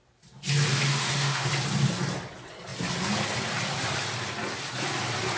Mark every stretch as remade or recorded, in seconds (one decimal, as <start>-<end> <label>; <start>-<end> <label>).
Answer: 0.0-0.7 recorded; 0.7-1.5 remade; 1.5-5.4 recorded